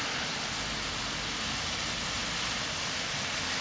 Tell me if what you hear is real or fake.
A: real